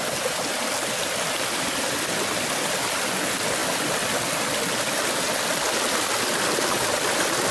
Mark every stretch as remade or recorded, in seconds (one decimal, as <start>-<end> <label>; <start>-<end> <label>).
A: 0.0-7.5 recorded

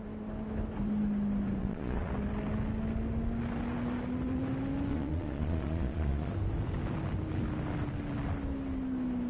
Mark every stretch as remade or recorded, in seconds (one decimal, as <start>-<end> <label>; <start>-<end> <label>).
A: 0.0-1.6 recorded; 1.6-2.1 remade; 2.1-4.9 recorded; 4.9-6.3 remade; 6.3-9.3 recorded

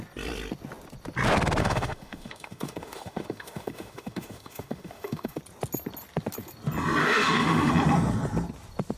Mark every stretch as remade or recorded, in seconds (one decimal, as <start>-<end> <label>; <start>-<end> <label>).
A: 0.0-1.6 recorded; 1.6-5.4 remade; 5.4-7.0 recorded; 7.0-7.7 remade; 7.7-9.0 recorded

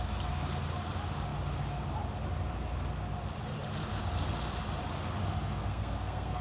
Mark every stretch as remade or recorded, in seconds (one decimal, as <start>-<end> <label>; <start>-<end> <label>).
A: 0.0-5.2 recorded; 5.2-6.4 remade

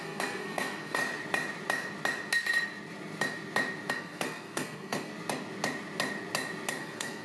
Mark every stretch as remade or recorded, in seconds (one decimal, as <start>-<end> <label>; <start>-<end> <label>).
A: 0.0-1.0 remade; 1.0-3.9 recorded; 3.9-5.1 remade; 5.1-6.8 recorded; 6.8-7.2 remade

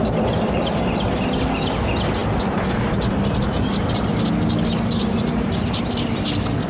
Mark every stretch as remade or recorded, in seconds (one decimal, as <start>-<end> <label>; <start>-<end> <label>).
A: 0.0-6.7 recorded